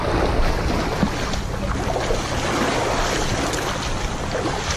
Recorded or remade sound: recorded